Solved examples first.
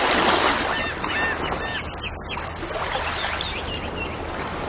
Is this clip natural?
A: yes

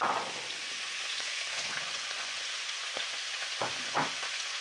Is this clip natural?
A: no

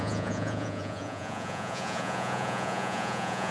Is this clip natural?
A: no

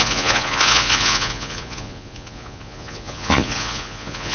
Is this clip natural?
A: no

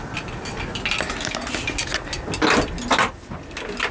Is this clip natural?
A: yes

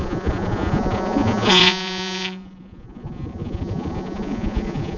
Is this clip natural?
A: no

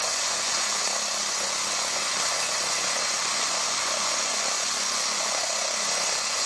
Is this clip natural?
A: no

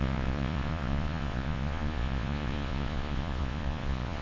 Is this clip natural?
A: no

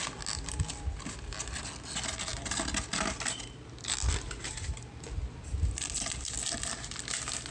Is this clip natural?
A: yes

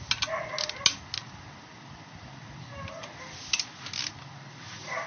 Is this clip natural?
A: yes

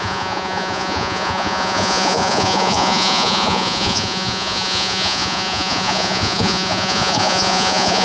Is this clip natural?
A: no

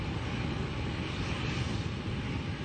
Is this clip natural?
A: yes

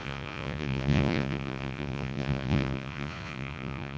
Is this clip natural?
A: no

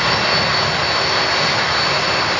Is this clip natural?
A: yes